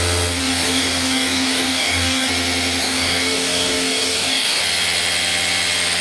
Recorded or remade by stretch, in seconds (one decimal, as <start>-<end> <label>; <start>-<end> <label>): 0.0-0.4 recorded; 0.4-2.3 remade; 2.3-2.8 recorded; 2.8-4.6 remade; 4.6-6.0 recorded

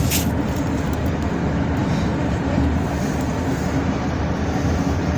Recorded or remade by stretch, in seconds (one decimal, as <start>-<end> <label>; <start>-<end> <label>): 0.0-1.8 recorded; 1.8-2.8 remade; 2.8-3.4 recorded; 3.4-4.2 remade; 4.2-5.2 recorded

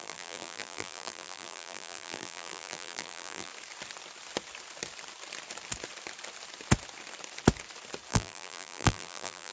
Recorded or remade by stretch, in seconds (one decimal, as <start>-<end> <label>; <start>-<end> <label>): 0.0-3.5 remade; 3.5-8.1 recorded; 8.1-9.5 remade

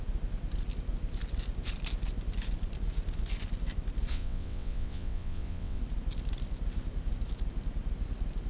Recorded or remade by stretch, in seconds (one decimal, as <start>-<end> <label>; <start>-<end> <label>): 0.0-4.1 recorded; 4.1-5.8 remade; 5.8-8.5 recorded

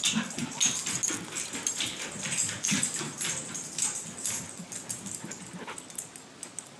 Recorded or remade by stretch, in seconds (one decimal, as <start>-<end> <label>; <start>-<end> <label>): 0.0-6.8 recorded